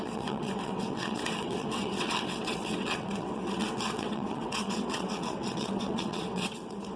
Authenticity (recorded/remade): remade